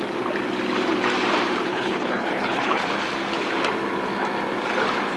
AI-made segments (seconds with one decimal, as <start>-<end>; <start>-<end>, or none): 1.7-2.9